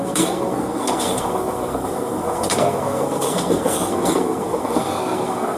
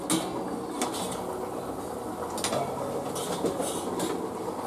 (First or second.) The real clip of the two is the second